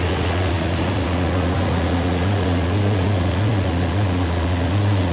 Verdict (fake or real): fake